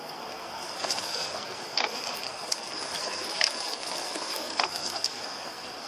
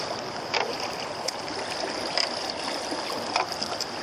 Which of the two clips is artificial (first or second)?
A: first